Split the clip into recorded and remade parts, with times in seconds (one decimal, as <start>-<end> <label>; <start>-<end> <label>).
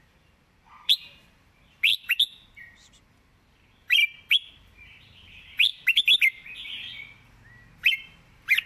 0.0-5.7 remade; 5.7-8.0 recorded; 8.0-8.7 remade